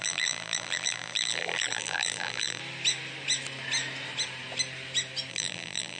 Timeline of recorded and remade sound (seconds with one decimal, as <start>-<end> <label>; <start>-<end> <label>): 0.0-2.6 remade; 2.6-5.3 recorded; 5.3-6.0 remade